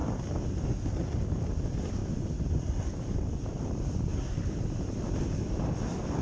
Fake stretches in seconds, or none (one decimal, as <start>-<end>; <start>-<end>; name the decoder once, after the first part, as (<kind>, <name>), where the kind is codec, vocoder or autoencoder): none